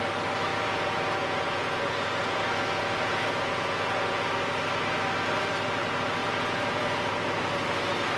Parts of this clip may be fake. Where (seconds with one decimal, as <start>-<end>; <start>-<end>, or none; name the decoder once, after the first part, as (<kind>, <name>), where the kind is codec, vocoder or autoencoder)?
0.5-4.3 (vocoder, Vocos); 6.2-7.1